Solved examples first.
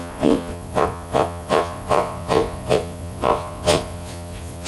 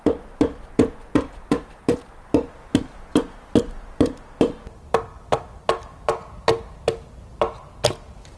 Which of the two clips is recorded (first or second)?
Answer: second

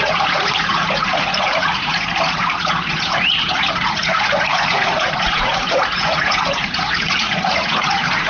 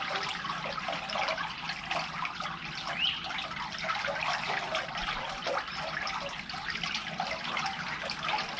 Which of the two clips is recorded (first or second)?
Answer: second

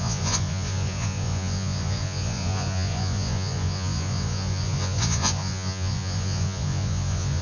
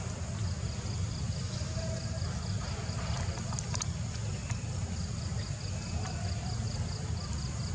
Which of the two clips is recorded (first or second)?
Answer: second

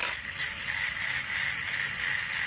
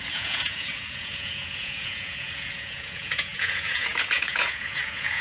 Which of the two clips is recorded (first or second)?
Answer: first